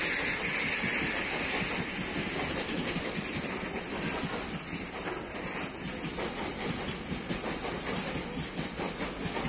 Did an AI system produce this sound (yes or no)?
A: no